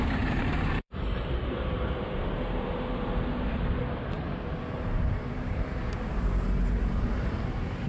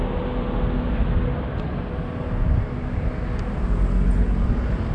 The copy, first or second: first